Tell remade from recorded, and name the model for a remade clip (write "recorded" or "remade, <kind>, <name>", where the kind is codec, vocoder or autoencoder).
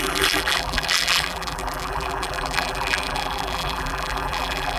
remade, vocoder, BigVGAN v2